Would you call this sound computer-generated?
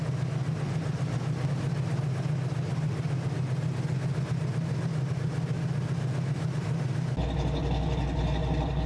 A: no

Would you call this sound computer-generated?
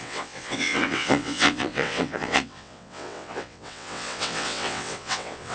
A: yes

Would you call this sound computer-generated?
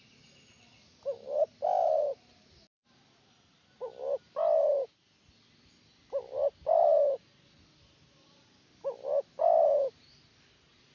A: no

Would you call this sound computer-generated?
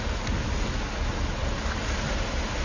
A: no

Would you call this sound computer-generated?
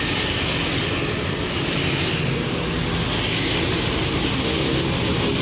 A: no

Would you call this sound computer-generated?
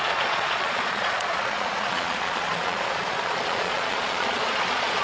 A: yes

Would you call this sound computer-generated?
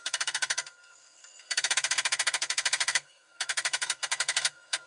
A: yes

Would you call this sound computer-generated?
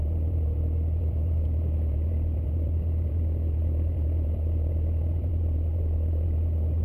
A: yes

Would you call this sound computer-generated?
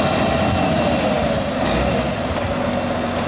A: no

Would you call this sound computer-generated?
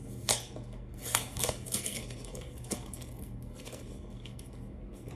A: yes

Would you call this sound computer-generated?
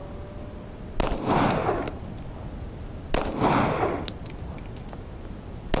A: no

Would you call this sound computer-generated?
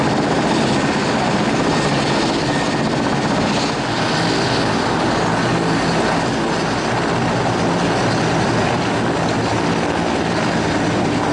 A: no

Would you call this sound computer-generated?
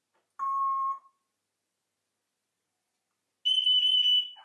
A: no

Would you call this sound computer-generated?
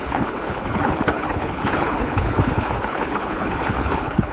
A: yes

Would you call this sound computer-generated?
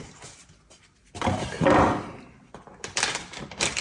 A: no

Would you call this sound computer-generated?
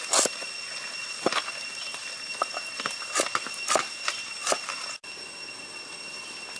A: no